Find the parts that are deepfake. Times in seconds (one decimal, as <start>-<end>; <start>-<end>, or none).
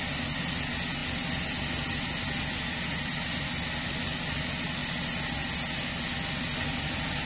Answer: none